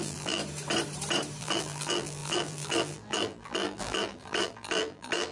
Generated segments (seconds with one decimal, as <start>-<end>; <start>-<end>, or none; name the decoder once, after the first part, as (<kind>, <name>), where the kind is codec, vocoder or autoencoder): 0.0-0.4 (vocoder, BigVGAN v2); 1.4-5.3